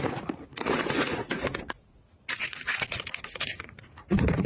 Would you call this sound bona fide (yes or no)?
no